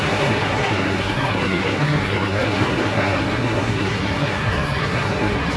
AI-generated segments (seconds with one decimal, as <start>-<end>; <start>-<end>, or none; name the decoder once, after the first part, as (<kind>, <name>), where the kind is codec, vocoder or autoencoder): 0.0-5.6 (codec, SNAC)

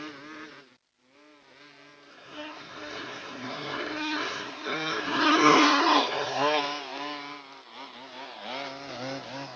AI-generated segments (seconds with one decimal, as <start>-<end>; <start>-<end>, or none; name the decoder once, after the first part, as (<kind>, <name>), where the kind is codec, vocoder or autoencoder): 2.1-6.6 (codec, SNAC)

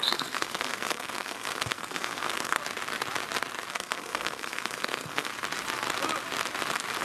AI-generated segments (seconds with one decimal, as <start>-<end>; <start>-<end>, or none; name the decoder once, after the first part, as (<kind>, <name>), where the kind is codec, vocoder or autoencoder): 0.0-2.6 (codec, SNAC); 3.7-5.3